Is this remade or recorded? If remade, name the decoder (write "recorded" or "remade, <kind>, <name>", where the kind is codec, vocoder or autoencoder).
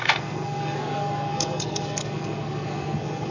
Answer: remade, codec, SNAC